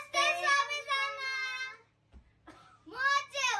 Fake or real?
real